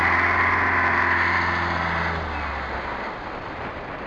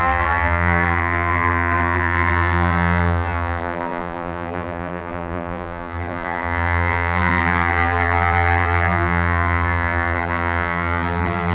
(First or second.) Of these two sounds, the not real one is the second